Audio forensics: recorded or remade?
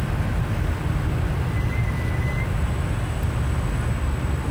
recorded